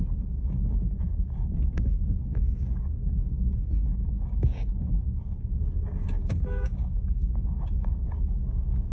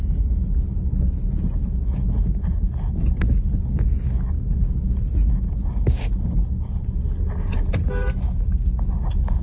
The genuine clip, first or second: second